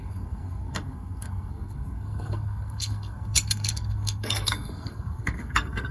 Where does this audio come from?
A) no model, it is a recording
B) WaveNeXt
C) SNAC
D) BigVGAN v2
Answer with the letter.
C